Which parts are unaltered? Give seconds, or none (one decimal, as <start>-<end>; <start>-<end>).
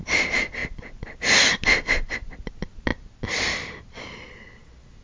0.0-5.0